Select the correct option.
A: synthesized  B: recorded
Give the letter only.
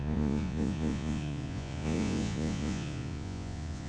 A